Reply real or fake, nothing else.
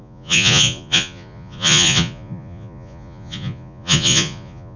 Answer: fake